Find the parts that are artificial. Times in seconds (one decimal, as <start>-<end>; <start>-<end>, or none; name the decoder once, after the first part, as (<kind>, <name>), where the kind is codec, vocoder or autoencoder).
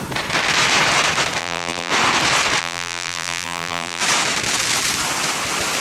1.4-1.9 (vocoder, BigVGAN v2); 2.6-4.0